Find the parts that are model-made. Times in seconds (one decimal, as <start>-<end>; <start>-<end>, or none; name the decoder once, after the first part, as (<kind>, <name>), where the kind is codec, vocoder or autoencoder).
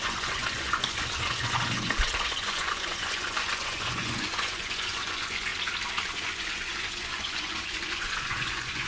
0.0-5.5 (vocoder, Vocos); 6.0-8.9